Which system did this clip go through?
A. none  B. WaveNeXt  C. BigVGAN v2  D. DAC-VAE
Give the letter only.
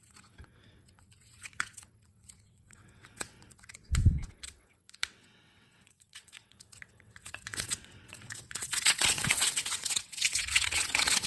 B